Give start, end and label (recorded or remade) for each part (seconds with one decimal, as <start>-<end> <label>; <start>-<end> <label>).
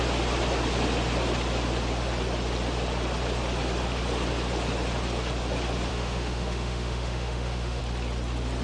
0.0-5.9 recorded; 5.9-7.8 remade; 7.8-8.6 recorded